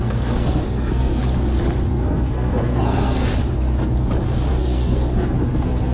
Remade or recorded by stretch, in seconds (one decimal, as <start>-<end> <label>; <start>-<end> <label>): 0.0-1.2 remade; 1.2-1.9 recorded; 1.9-3.3 remade; 3.3-4.5 recorded; 4.5-5.9 remade